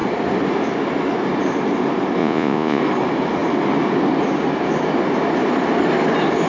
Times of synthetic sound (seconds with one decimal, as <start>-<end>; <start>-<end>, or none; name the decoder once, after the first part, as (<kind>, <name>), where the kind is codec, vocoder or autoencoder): 2.2-2.8 (vocoder, Vocos)